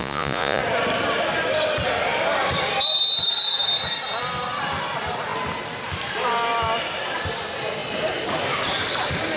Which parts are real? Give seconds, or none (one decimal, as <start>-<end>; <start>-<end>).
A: 0.6-9.4